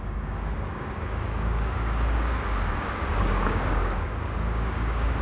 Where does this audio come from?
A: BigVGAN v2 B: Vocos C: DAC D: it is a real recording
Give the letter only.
C